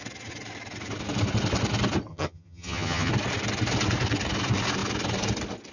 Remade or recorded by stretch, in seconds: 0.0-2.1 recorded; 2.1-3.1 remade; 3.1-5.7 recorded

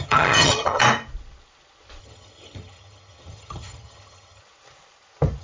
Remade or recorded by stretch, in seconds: 0.0-0.8 remade; 0.8-2.0 recorded; 2.0-4.4 remade; 4.4-5.4 recorded